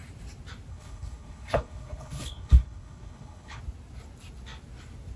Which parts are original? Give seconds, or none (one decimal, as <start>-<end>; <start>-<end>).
0.0-0.7; 3.6-5.2